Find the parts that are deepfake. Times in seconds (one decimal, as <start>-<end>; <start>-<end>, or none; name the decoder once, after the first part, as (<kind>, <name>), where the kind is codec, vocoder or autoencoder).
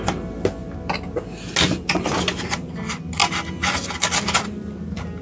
none